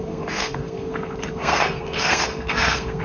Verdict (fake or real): fake